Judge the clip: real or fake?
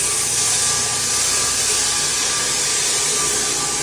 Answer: real